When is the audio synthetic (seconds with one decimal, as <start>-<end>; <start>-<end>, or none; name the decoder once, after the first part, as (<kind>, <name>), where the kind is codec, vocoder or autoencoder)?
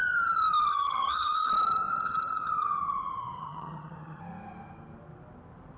0.7-1.5 (vocoder, HiFi-GAN); 1.9-2.8; 3.4-4.2